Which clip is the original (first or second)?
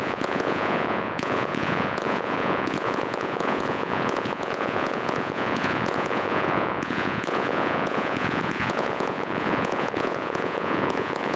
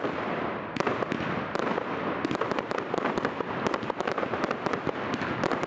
second